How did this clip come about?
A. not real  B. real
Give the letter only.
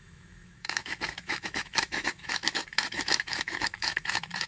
A